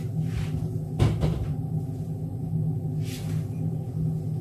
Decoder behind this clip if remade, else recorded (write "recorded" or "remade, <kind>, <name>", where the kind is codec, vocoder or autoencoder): recorded